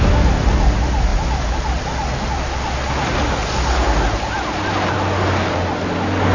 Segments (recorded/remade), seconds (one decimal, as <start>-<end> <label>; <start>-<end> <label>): 0.0-6.3 recorded